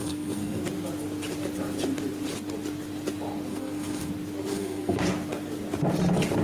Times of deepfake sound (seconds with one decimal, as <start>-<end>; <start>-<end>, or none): 0.0-0.6; 3.5-4.1; 4.5-5.0

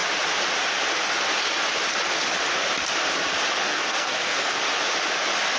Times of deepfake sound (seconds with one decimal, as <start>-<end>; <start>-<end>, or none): 3.7-4.6

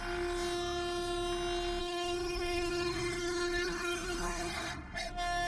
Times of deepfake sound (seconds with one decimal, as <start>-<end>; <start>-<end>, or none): 1.8-5.1